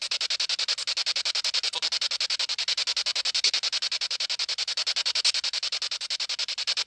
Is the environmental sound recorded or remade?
recorded